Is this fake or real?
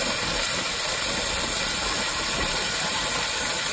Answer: real